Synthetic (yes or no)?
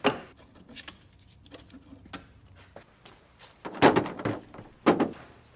no